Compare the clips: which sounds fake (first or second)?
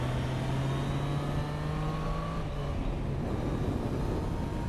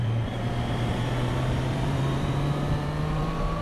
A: second